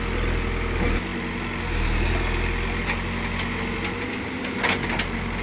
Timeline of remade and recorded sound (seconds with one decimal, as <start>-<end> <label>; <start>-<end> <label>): 0.0-5.4 recorded